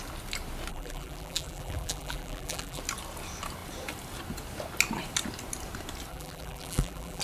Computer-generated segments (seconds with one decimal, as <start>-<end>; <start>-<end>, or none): 0.7-2.8; 6.1-7.2